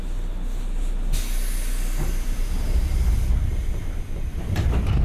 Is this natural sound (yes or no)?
yes